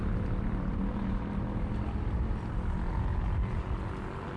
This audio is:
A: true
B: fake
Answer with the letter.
A